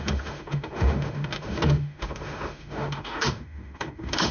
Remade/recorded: remade